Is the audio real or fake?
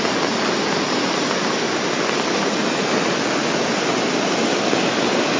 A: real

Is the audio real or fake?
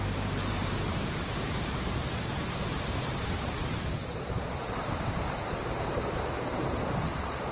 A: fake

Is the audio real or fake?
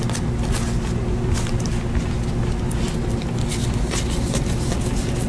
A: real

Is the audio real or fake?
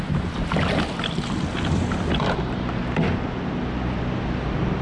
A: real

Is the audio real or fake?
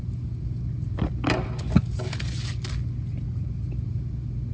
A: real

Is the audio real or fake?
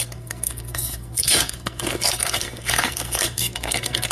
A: fake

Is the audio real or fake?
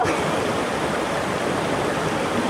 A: real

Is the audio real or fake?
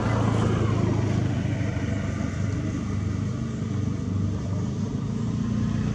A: real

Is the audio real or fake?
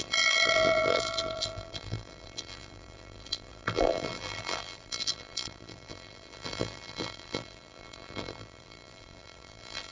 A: fake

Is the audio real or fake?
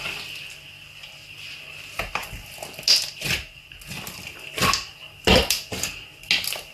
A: real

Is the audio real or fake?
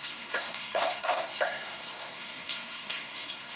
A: fake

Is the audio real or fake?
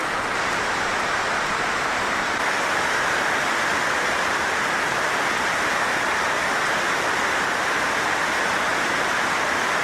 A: real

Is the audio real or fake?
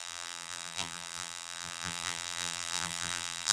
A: fake